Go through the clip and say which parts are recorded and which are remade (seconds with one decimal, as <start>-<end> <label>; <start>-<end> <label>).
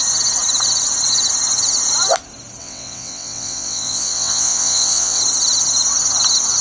0.0-2.6 recorded; 2.6-5.2 remade; 5.2-6.6 recorded